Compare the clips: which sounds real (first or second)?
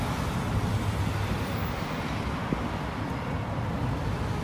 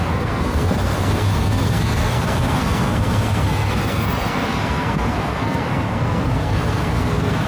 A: first